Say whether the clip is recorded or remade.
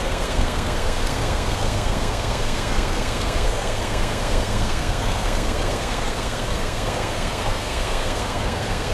remade